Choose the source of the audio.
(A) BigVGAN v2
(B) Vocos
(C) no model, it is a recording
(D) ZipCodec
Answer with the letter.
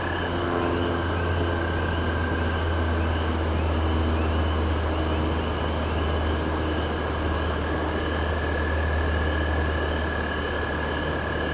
C